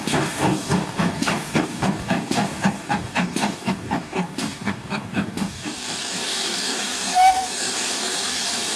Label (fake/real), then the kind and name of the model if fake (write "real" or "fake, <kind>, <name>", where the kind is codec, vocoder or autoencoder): fake, codec, DAC